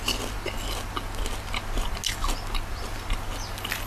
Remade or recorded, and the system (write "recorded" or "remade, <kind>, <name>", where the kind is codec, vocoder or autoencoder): recorded